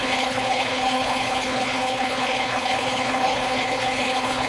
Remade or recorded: remade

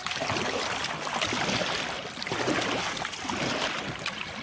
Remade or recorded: recorded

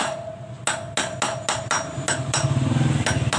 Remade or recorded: recorded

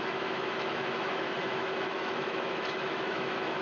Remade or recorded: remade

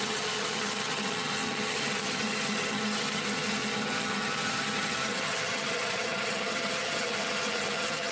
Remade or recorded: remade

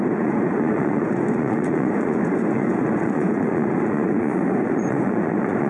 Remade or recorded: remade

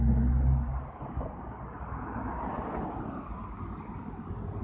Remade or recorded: recorded